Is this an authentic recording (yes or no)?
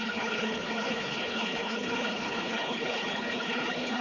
no